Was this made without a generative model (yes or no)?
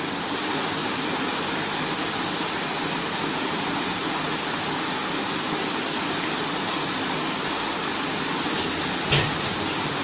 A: yes